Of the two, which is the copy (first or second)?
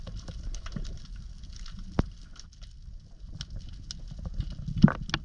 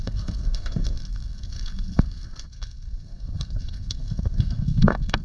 second